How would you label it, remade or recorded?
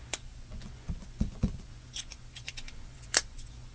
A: remade